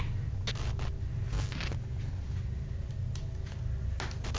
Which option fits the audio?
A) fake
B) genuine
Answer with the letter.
B